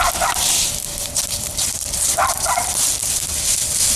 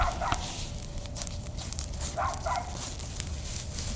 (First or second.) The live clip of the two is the second